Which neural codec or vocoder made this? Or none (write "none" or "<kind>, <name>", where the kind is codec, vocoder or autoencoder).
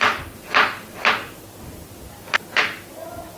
none